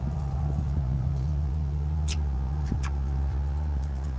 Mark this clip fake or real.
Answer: fake